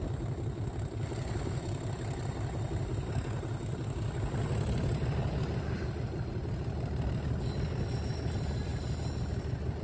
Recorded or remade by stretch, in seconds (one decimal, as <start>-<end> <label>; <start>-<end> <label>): 0.0-9.8 recorded